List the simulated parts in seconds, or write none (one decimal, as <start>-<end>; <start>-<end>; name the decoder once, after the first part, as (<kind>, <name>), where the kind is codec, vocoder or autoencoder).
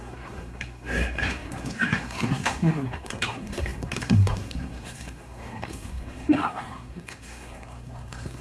0.0-8.4 (codec, SNAC)